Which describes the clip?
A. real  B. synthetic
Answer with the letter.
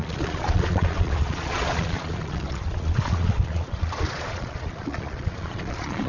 B